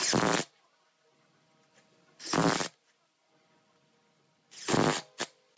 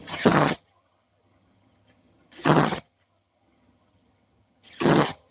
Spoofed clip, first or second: second